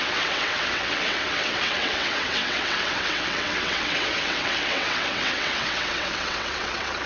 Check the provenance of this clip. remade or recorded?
remade